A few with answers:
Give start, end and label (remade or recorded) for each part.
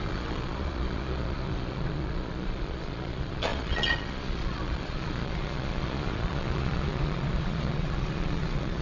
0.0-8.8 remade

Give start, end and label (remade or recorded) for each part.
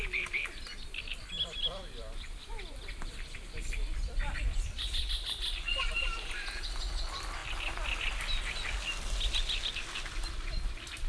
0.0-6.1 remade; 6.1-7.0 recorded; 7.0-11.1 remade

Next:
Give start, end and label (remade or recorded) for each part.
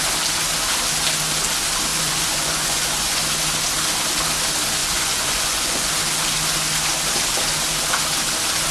0.0-1.9 recorded; 1.9-3.2 remade; 3.2-4.8 recorded; 4.8-5.9 remade; 5.9-8.7 recorded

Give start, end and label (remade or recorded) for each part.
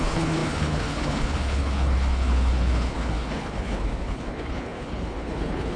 0.0-5.8 remade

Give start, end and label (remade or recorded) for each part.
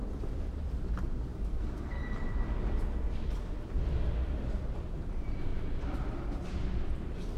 0.0-1.3 recorded; 1.3-2.0 remade; 2.0-7.4 recorded